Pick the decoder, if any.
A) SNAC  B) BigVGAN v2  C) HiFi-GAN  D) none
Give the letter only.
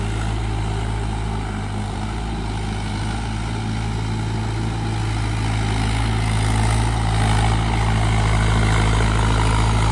D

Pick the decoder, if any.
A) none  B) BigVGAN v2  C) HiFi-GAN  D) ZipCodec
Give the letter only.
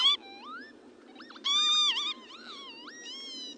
A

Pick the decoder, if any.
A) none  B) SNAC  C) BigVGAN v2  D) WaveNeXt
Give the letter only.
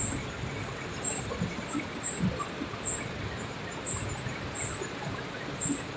C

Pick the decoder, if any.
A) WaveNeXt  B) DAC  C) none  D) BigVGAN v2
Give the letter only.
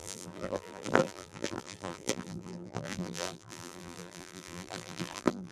D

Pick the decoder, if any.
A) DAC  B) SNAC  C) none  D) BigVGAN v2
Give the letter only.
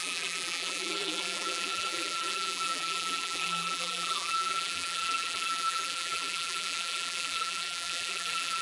D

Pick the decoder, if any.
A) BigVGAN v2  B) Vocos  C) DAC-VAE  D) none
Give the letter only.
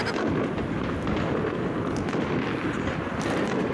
D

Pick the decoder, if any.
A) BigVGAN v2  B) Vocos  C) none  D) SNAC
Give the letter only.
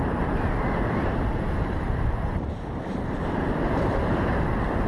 A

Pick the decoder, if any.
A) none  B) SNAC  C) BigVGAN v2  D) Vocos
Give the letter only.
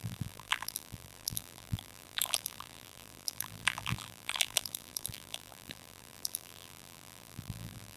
C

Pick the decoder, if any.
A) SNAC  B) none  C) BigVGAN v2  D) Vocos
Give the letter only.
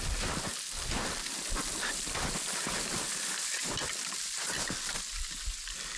B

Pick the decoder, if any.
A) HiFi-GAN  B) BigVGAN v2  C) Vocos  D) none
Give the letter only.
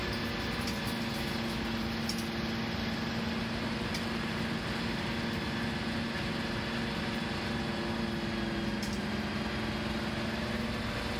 D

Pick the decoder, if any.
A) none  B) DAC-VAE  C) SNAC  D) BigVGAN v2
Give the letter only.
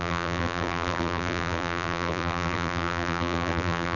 D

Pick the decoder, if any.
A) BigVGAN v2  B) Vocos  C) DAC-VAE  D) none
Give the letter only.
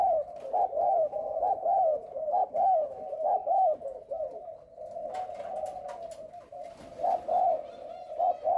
D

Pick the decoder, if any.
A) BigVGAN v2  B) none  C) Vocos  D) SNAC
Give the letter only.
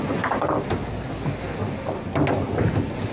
B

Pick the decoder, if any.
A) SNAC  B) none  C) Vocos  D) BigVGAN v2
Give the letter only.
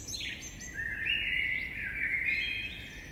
B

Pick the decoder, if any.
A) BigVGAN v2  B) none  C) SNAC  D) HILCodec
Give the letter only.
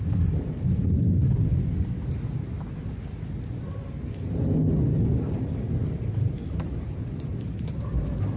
B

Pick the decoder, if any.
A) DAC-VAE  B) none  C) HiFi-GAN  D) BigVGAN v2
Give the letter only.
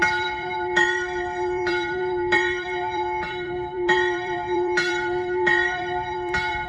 D